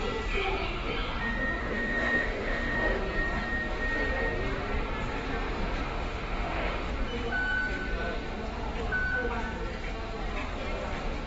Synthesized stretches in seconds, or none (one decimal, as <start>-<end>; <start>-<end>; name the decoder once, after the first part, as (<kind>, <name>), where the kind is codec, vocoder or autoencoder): 1.6-3.0 (autoencoder, DAC-VAE); 5.9-6.9

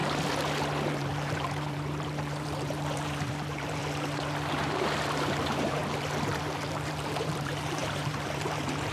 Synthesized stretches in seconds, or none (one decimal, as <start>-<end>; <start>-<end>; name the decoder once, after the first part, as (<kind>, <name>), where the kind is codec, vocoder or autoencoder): 0.9-3.8 (vocoder, BigVGAN v2); 4.5-5.8; 6.4-8.9

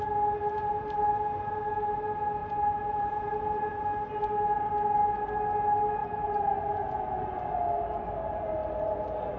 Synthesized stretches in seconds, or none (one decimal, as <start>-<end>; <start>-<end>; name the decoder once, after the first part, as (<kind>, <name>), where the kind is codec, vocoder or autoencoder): 2.4-3.8 (vocoder, Vocos); 6.0-7.4

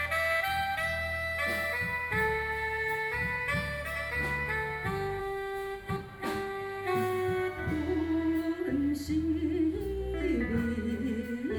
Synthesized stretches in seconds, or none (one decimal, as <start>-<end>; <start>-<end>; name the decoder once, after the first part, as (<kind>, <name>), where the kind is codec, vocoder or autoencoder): 5.2-5.9 (autoencoder, DAC-VAE)

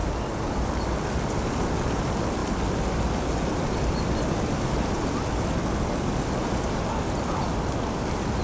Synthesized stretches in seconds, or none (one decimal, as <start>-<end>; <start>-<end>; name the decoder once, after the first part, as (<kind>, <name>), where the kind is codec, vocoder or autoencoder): none